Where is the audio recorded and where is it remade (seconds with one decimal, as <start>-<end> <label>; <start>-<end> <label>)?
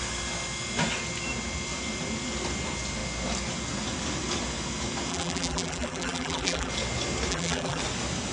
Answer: 0.0-5.1 recorded; 5.1-6.7 remade; 6.7-7.3 recorded; 7.3-7.8 remade; 7.8-8.3 recorded